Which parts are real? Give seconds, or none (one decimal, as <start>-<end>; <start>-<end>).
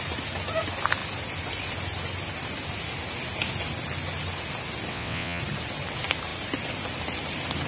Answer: 0.0-4.9; 5.4-7.7